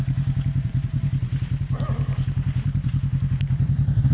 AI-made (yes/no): yes